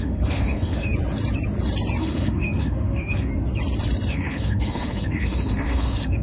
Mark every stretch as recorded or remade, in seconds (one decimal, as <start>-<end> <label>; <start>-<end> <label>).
0.0-0.9 remade; 0.9-2.0 recorded; 2.0-3.3 remade; 3.3-4.1 recorded; 4.1-6.2 remade